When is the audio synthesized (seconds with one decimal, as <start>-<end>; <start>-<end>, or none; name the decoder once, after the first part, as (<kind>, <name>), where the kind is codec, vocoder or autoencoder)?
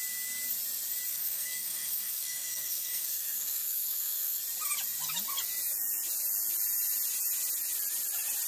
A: 1.1-4.4 (codec, SNAC)